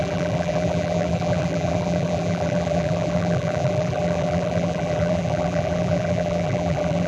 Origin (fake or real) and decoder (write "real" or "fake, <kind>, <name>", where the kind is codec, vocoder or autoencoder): fake, vocoder, BigVGAN v2